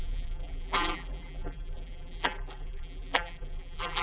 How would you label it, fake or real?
fake